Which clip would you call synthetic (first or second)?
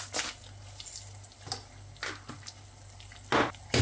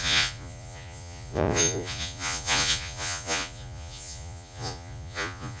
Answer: second